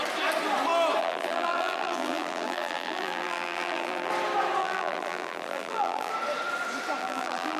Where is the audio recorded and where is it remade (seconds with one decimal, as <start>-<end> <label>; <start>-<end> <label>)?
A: 0.0-1.0 recorded; 1.0-4.1 remade; 4.1-4.6 recorded; 4.6-6.1 remade; 6.1-7.0 recorded; 7.0-7.6 remade